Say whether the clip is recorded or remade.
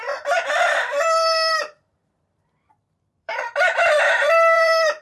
remade